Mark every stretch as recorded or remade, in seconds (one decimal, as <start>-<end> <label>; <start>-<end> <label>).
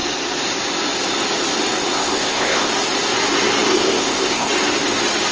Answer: 0.0-2.0 recorded; 2.0-2.7 remade; 2.7-3.7 recorded; 3.7-4.5 remade; 4.5-5.3 recorded